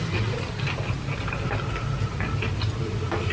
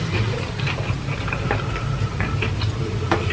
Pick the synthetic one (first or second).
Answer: second